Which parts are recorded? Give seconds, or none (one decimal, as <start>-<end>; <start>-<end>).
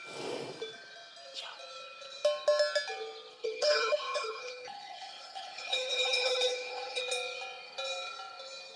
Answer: 0.0-3.3; 7.0-8.8